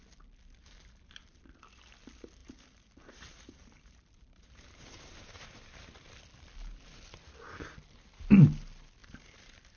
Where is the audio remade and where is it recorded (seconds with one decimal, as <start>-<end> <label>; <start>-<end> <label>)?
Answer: 0.0-0.6 recorded; 0.6-1.4 remade; 1.4-2.4 recorded; 2.4-6.1 remade; 6.1-9.0 recorded; 9.0-9.8 remade